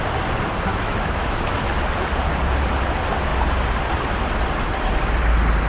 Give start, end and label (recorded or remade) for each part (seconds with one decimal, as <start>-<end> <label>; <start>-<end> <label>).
0.0-0.7 recorded; 0.7-1.6 remade; 1.6-5.7 recorded